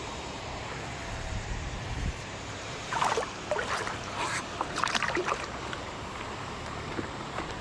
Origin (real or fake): fake